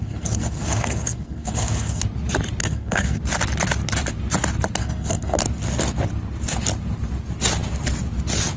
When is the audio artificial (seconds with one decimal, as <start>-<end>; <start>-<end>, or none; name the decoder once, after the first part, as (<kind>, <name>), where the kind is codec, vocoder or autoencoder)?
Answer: 0.0-2.0 (codec, SNAC); 2.6-3.2; 4.8-5.4